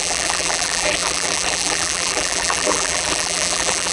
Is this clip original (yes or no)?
no